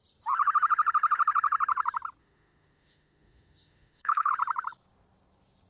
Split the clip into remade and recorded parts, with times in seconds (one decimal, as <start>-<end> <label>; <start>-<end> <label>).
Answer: 0.0-2.2 recorded; 2.2-4.3 remade; 4.3-5.7 recorded